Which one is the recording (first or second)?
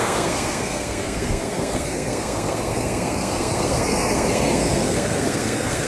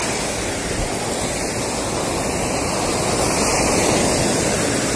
second